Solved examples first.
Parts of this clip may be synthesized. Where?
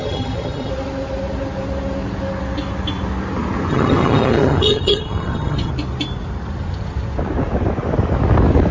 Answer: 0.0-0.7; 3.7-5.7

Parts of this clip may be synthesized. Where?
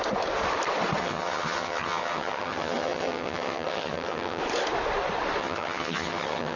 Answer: 1.0-4.4; 5.4-6.6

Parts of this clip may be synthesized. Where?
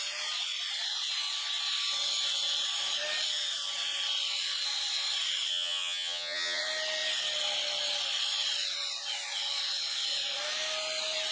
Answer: 5.5-6.6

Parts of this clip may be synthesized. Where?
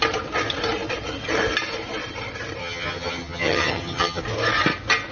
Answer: 2.6-4.2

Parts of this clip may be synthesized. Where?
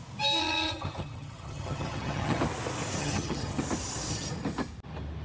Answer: 0.4-2.4; 3.0-3.6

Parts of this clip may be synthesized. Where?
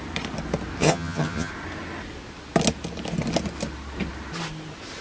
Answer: 0.8-1.5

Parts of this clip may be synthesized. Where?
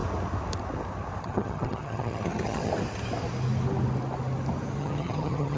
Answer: 1.2-2.7; 4.8-5.6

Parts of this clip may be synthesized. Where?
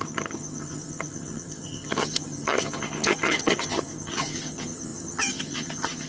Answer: 0.0-6.1